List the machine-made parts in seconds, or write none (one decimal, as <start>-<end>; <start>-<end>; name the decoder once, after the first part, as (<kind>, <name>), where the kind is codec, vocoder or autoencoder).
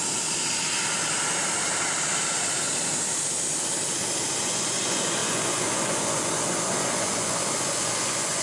4.4-8.4 (vocoder, Vocos)